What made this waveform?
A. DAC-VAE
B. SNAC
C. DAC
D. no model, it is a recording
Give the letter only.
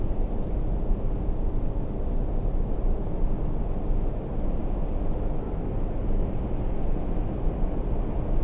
D